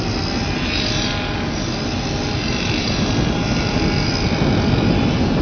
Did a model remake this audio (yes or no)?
no